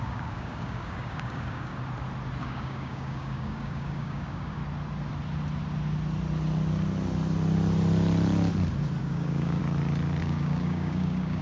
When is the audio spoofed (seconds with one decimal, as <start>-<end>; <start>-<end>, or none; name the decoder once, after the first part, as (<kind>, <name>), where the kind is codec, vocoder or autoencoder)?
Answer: 0.0-1.7 (codec, DAC); 2.4-4.6; 9.0-9.6; 10.2-11.4